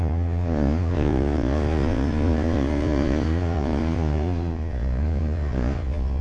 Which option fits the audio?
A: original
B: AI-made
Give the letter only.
B